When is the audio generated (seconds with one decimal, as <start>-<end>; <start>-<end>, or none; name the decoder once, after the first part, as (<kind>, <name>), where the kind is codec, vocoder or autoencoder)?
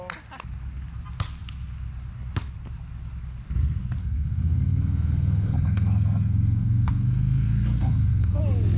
4.0-8.4 (codec, SNAC)